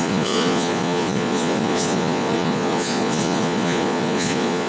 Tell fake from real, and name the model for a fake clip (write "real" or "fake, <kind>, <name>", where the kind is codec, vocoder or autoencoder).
fake, vocoder, Vocos